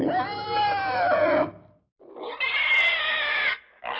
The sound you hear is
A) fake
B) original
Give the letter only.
B